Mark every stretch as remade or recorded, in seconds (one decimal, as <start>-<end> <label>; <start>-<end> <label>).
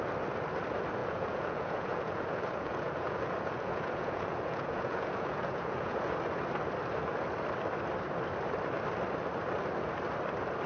0.0-1.0 recorded; 1.0-6.1 remade; 6.1-10.7 recorded